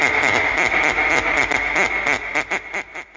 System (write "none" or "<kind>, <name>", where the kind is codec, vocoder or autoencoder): none